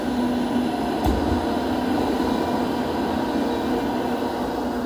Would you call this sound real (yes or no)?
yes